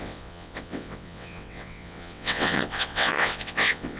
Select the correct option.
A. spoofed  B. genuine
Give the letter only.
A